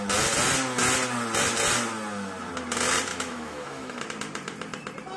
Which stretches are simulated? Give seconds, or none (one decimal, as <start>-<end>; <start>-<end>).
3.1-4.0